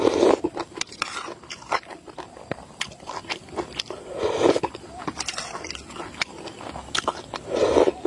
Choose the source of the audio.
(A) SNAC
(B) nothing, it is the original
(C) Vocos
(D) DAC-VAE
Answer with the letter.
B